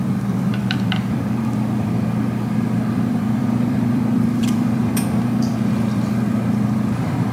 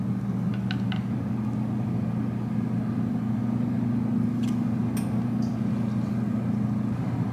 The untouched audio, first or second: second